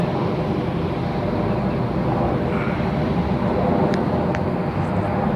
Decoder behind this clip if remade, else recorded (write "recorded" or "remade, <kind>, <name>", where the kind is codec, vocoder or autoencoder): remade, vocoder, BigVGAN v2